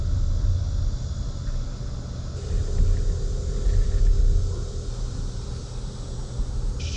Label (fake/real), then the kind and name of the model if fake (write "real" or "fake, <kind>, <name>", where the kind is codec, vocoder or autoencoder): real